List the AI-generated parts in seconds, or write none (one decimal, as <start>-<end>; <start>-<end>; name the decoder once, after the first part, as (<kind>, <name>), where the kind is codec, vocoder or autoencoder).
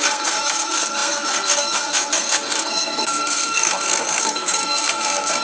0.0-5.4 (codec, SNAC)